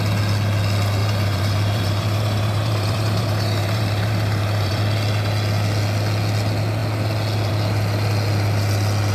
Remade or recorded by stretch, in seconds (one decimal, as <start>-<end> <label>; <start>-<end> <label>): 0.0-1.0 recorded; 1.0-4.8 remade; 4.8-9.1 recorded